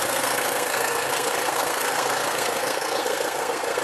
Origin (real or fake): fake